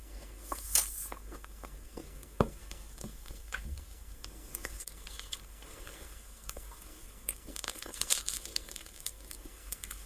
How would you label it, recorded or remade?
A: remade